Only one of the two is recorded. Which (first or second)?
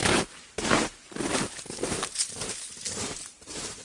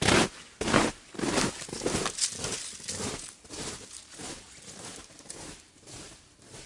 second